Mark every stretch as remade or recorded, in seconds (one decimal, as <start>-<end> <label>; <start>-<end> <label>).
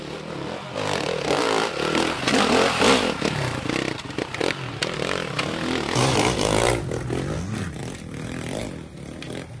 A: 0.0-6.0 recorded; 6.0-6.7 remade; 6.7-9.6 recorded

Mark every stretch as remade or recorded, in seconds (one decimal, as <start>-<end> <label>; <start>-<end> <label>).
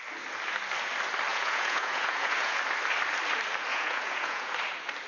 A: 0.0-1.3 recorded; 1.3-2.6 remade; 2.6-3.7 recorded; 3.7-4.5 remade; 4.5-5.1 recorded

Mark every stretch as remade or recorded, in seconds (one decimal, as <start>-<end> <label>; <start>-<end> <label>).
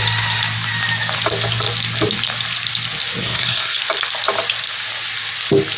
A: 0.0-3.2 recorded; 3.2-3.8 remade; 3.8-5.8 recorded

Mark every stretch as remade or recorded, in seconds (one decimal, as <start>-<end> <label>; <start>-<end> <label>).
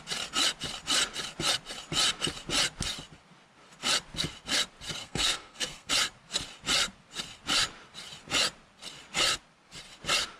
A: 0.0-5.0 recorded; 5.0-5.9 remade; 5.9-10.4 recorded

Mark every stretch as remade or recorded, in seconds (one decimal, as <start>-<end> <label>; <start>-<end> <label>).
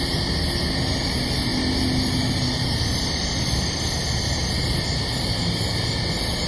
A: 0.0-6.5 recorded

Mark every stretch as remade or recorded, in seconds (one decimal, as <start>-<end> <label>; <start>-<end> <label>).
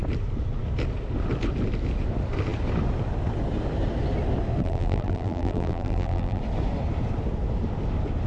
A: 0.0-4.6 recorded; 4.6-6.4 remade; 6.4-8.3 recorded